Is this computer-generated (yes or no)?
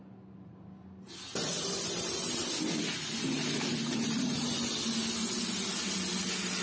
no